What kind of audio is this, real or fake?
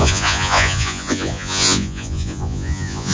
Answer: fake